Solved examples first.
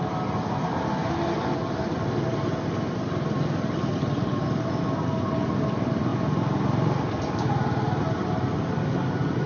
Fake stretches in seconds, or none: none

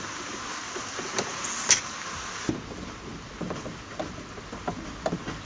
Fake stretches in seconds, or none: none

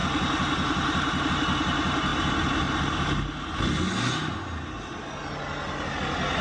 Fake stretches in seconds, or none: none

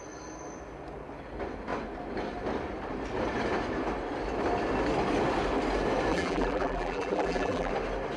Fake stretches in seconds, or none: 6.1-7.7 (vocoder, BigVGAN v2)

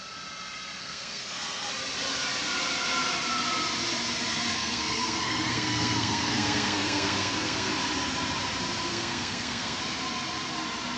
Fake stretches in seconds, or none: 0.8-1.7 (codec, SNAC); 4.5-7.7; 8.9-9.8

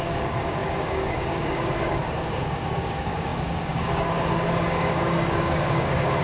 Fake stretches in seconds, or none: 0.0-6.2 (codec, DAC)

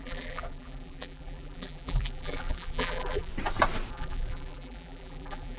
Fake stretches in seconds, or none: 0.0-3.3 (vocoder, BigVGAN v2); 3.9-5.6

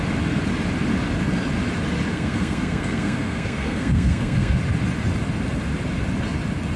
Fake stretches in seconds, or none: 2.1-4.6 (codec, SNAC)